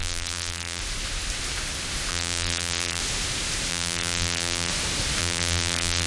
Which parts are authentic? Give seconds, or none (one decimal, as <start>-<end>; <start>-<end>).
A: 0.8-2.1; 3.0-3.7; 4.7-5.2